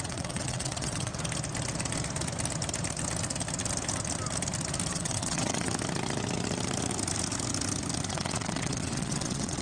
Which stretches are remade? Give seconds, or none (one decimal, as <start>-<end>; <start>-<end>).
0.0-1.1; 4.9-5.7; 8.1-9.6